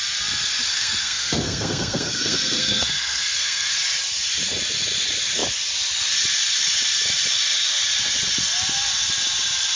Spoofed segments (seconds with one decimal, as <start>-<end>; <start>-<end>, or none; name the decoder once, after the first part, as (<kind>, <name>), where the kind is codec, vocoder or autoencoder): 0.7-3.7 (codec, SNAC)